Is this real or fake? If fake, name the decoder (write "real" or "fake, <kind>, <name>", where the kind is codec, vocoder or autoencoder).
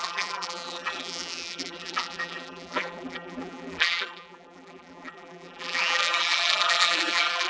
fake, vocoder, BigVGAN v2